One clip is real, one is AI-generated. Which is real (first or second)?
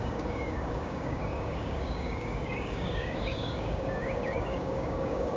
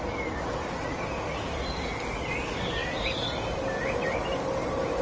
second